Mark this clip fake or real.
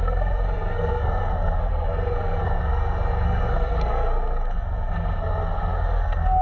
fake